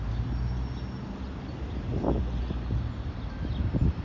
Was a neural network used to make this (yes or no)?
no